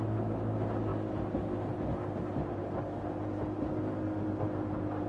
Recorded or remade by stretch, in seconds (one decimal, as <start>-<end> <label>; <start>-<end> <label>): 0.0-5.1 recorded

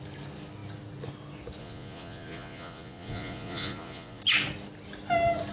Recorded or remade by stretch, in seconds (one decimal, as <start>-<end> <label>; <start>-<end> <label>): 0.0-1.6 recorded; 1.6-4.2 remade; 4.2-5.5 recorded

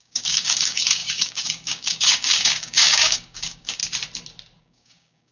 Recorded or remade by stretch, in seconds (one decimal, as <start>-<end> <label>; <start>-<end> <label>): 0.0-3.8 remade; 3.8-4.6 recorded; 4.6-5.3 remade

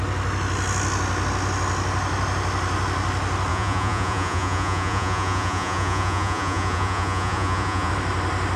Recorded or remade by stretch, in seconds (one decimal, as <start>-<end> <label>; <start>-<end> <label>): 0.0-3.5 recorded; 3.5-7.9 remade; 7.9-8.6 recorded

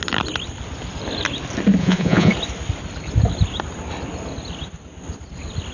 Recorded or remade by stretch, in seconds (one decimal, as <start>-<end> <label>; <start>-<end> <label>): 0.0-1.8 recorded; 1.8-2.3 remade; 2.3-5.7 recorded

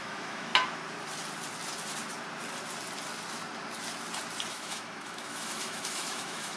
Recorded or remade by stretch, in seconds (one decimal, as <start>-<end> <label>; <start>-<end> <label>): 0.0-0.5 remade; 0.5-4.5 recorded; 4.5-6.6 remade